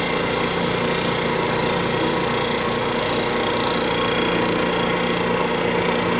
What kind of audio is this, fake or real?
real